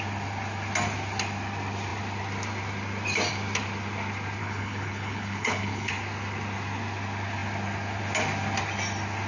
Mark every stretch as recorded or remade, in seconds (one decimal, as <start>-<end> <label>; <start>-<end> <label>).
0.0-4.4 recorded; 4.4-5.9 remade; 5.9-9.3 recorded